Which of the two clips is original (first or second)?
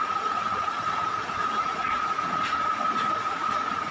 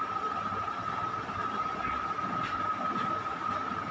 second